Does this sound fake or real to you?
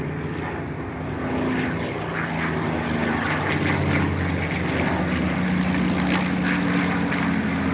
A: real